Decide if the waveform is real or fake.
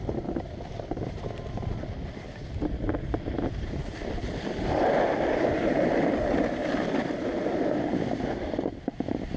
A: real